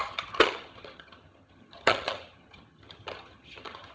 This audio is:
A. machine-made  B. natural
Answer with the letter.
A